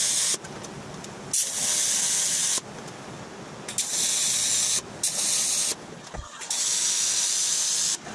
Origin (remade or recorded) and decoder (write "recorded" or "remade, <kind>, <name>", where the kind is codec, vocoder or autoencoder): recorded